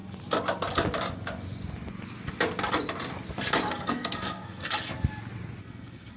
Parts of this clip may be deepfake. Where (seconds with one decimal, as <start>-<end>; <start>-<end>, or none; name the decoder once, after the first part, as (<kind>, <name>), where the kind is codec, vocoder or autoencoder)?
3.7-4.9 (codec, SNAC); 5.6-6.2